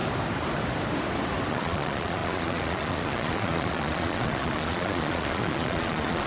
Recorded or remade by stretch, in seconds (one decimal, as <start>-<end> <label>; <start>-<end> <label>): 0.0-1.5 recorded; 1.5-6.3 remade